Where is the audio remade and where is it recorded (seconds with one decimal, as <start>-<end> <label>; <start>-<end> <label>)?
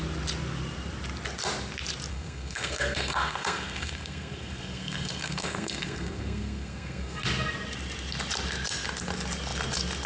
0.0-2.1 recorded; 2.1-7.2 remade; 7.2-10.1 recorded